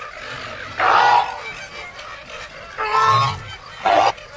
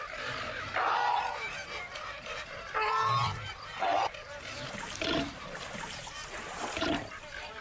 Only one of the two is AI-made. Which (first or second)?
second